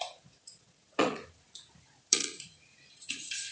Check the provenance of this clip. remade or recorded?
remade